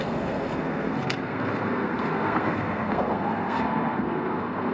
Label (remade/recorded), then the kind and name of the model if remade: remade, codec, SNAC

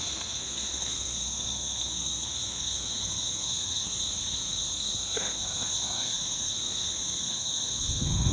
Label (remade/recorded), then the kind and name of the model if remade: remade, codec, SNAC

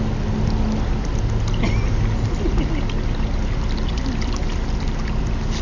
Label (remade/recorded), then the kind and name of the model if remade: recorded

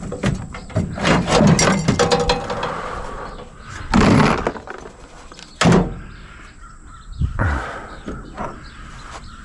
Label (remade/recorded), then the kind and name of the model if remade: recorded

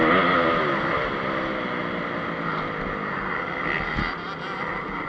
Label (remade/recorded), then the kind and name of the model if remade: recorded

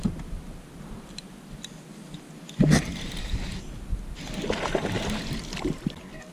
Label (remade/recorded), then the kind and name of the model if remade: recorded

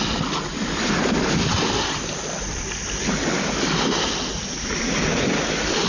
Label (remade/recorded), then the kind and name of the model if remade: recorded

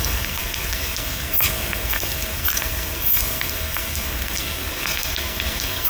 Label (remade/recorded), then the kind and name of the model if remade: remade, codec, SNAC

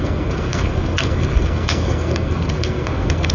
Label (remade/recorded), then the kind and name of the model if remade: remade, codec, SNAC